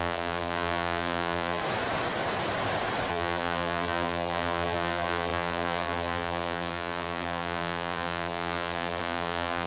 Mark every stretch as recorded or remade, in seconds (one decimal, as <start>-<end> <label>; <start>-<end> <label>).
0.0-1.6 remade; 1.6-3.1 recorded; 3.1-9.7 remade